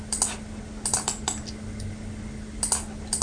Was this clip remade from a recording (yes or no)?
no